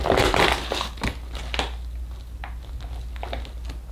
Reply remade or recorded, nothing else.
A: recorded